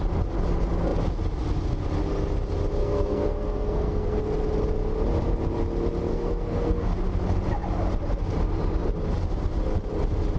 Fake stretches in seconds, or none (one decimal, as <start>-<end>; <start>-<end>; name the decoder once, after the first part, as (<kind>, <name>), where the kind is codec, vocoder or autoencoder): 2.8-4.2 (codec, SNAC); 6.1-6.9